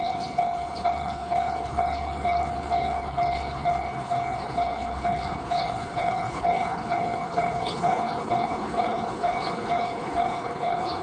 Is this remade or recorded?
remade